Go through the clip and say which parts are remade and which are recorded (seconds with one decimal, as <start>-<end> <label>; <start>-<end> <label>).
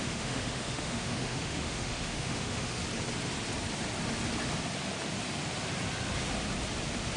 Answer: 0.0-2.8 remade; 2.8-7.2 recorded